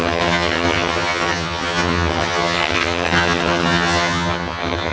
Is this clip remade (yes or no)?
yes